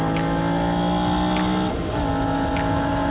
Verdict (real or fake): real